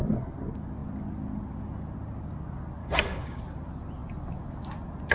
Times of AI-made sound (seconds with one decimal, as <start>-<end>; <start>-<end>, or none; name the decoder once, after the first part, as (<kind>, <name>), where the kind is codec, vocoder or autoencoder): 2.8-3.4 (codec, DAC)